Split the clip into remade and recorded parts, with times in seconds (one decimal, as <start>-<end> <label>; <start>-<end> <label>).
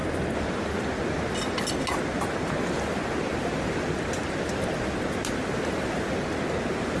0.0-7.0 recorded